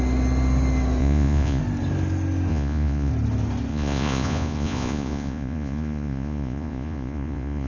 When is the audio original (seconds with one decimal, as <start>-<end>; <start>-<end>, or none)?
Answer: 0.0-1.0; 1.6-2.5; 3.1-3.7